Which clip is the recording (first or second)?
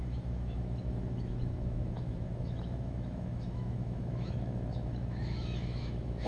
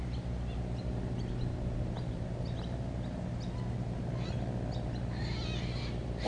second